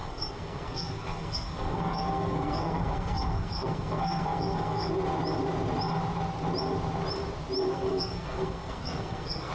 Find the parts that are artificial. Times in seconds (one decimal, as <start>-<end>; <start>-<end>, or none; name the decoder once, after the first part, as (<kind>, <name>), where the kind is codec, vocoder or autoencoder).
0.0-4.9 (codec, SNAC); 7.7-9.5